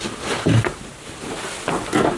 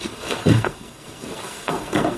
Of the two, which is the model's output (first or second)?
second